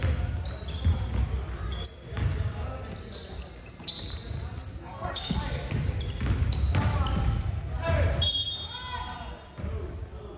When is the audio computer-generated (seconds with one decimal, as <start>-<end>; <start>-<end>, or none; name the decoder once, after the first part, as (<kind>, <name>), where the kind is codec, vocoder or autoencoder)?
4.8-5.4 (codec, SNAC)